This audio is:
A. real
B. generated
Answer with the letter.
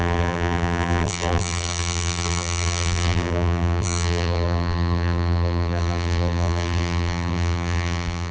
B